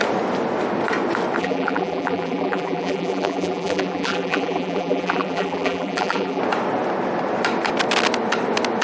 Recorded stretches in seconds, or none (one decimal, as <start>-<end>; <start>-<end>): 0.0-1.4; 6.4-8.8